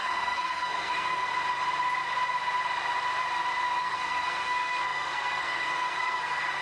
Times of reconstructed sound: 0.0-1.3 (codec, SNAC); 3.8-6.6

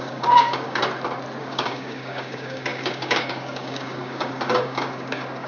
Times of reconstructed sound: 0.0-0.8 (codec, DAC); 1.4-5.5

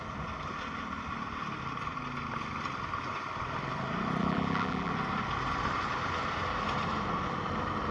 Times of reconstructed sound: 4.2-4.9 (vocoder, BigVGAN v2)